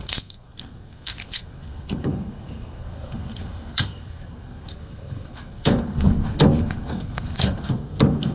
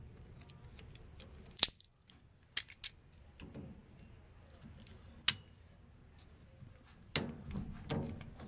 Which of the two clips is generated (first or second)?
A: first